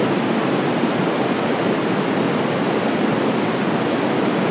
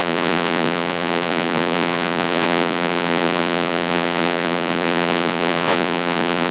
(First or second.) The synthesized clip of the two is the second